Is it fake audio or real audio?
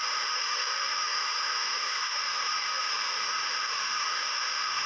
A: fake